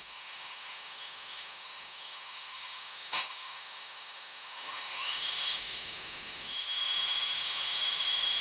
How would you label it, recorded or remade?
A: remade